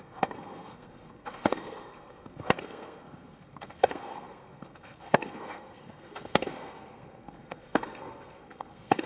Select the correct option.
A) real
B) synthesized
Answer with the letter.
B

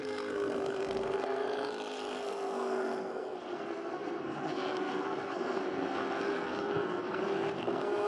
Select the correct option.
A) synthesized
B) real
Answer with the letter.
A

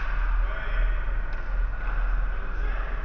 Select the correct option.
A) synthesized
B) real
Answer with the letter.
B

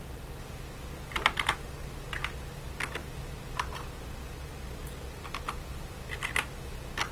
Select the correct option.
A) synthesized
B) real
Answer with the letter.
B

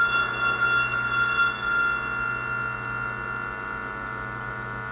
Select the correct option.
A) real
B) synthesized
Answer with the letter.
A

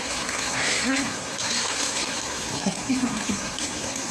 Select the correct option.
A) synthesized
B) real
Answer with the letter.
A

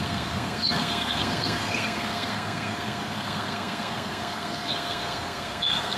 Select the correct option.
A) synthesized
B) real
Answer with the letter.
A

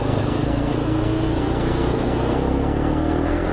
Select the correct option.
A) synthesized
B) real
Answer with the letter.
A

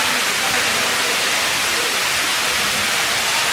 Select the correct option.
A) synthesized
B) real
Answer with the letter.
B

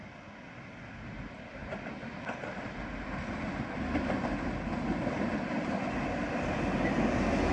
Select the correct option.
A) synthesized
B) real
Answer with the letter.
B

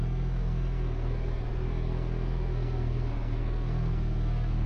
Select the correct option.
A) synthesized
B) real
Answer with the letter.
A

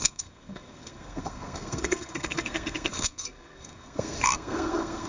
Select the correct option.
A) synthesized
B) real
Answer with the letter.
A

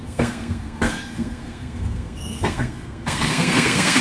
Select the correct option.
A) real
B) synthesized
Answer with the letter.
B